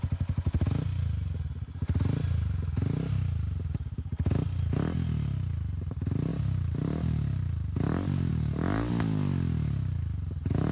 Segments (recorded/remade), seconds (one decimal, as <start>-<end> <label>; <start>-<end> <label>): 0.0-10.7 recorded